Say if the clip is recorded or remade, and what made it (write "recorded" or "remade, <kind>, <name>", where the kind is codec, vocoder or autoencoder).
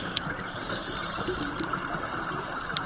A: remade, vocoder, BigVGAN v2